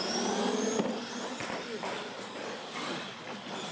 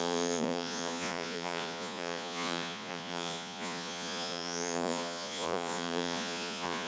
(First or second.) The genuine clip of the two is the first